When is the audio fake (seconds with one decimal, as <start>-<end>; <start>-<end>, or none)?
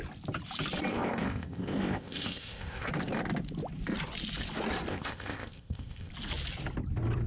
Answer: 0.9-2.9; 4.9-6.1